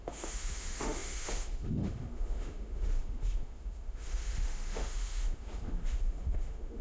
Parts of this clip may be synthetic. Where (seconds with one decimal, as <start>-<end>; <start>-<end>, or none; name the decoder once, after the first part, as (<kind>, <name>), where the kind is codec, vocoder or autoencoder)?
0.0-6.8 (autoencoder, DAC-VAE)